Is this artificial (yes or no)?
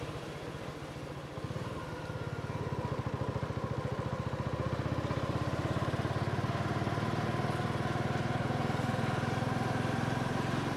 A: no